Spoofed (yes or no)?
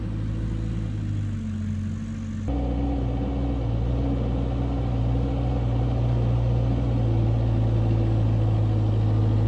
no